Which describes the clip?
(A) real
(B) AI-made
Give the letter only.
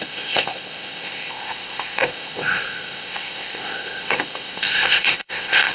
B